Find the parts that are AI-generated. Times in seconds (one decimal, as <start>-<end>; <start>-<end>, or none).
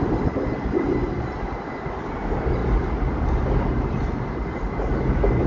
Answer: none